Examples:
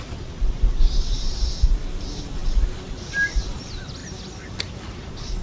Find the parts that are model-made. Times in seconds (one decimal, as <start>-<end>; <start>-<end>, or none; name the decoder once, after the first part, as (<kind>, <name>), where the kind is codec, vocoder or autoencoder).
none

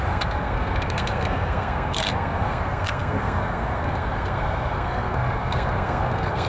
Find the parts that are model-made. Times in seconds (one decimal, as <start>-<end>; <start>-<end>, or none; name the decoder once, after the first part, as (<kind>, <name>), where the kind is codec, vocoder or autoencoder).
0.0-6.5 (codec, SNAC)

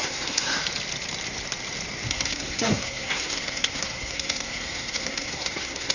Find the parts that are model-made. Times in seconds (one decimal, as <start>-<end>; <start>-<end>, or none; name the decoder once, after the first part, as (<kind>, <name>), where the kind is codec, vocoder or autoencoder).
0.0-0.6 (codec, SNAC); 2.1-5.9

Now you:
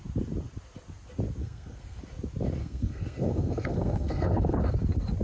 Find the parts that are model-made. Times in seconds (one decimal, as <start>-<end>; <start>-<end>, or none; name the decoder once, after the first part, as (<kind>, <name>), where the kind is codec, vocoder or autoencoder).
1.4-2.0 (codec, SNAC); 2.6-4.7